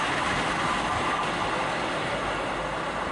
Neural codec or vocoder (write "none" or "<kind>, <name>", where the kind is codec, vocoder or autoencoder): none